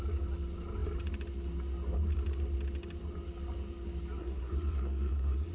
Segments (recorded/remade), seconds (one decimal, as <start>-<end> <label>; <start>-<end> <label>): 0.0-4.2 recorded; 4.2-5.5 remade